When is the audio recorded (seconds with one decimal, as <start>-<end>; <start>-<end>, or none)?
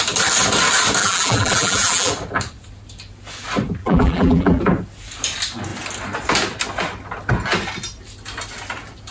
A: 0.0-1.0; 2.1-3.8; 4.6-9.1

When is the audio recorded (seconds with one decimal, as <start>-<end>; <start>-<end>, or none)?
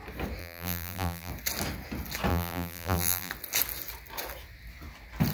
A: 0.0-0.4; 1.3-2.3; 3.3-5.3